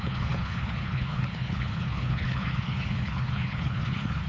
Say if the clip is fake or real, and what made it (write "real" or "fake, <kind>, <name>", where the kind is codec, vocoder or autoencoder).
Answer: fake, codec, HILCodec